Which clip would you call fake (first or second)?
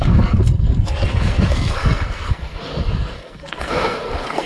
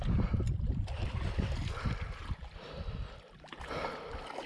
first